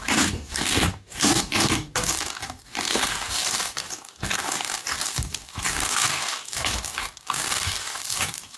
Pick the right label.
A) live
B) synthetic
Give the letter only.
B